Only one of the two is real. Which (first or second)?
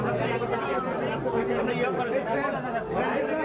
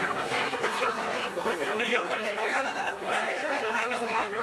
first